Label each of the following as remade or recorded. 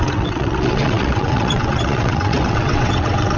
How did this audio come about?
remade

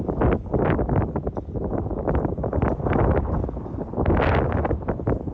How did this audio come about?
recorded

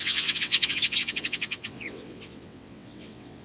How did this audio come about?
remade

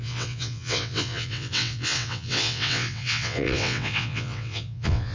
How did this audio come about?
remade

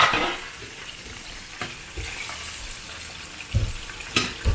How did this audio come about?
recorded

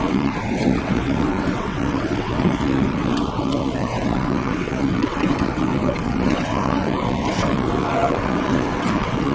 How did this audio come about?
remade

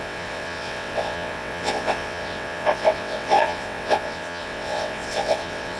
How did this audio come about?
remade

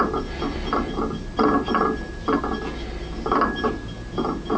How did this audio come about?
recorded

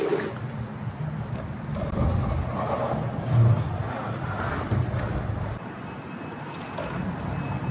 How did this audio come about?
recorded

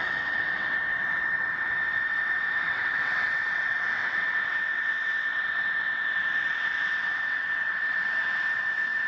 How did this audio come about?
remade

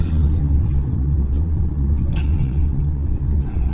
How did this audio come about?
remade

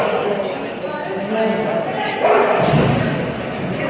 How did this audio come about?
recorded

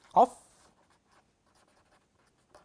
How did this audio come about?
recorded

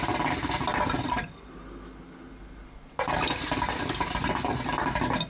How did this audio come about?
recorded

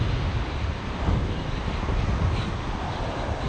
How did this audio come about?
recorded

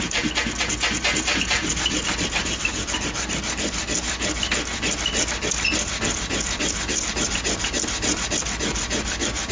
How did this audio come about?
recorded